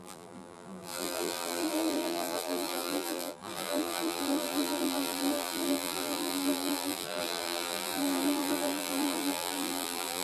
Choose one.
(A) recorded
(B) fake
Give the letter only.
B